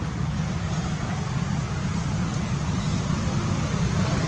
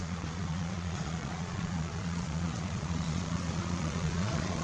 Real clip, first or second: first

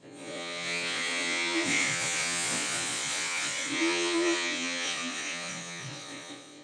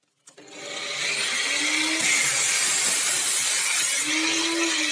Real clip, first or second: second